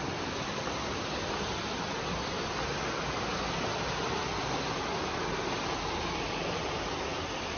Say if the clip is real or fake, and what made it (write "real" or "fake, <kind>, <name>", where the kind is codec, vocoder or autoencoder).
real